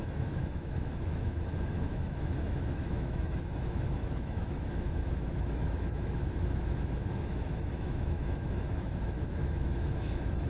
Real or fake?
fake